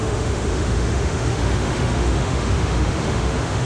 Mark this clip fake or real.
fake